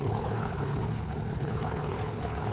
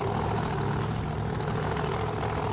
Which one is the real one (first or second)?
second